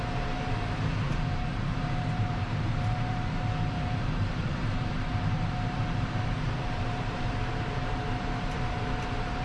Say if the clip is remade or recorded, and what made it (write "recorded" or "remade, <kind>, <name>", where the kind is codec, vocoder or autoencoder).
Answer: remade, vocoder, BigVGAN v2